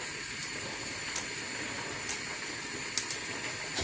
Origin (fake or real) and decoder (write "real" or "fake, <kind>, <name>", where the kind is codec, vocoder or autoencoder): real